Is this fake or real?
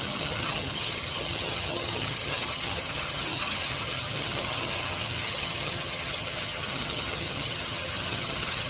fake